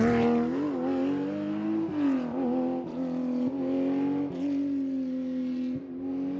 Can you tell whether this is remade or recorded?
recorded